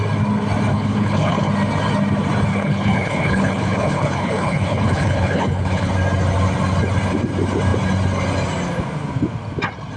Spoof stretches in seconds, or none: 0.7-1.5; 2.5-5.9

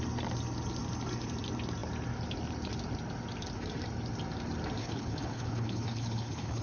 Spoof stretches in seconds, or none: 4.8-6.6

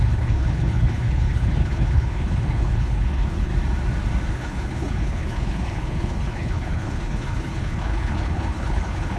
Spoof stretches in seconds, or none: 0.0-3.5; 4.3-9.2

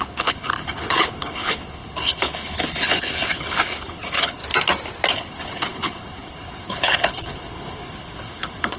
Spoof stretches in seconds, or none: 0.0-4.4; 5.1-8.8

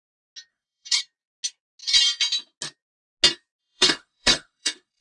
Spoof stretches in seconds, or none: 0.5-1.0; 3.6-5.0

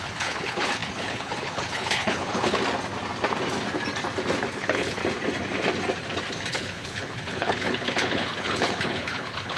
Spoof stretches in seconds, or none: 0.0-2.6; 4.5-5.0; 6.5-9.6